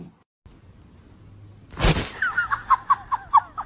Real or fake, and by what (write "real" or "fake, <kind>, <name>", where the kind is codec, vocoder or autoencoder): real